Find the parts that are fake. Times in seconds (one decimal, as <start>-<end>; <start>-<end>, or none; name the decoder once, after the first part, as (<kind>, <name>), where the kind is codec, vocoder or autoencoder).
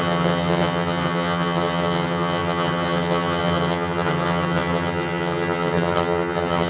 0.0-6.7 (vocoder, HiFi-GAN)